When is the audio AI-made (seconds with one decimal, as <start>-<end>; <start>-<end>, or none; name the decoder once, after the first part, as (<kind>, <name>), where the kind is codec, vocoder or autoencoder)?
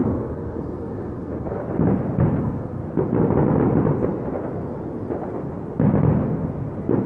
0.0-1.6 (codec, SNAC); 2.4-2.8